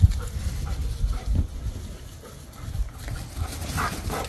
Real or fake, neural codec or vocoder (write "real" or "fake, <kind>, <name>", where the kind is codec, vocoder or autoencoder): real